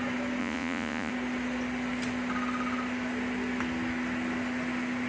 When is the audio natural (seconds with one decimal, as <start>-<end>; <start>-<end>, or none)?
0.0-0.4; 1.1-5.1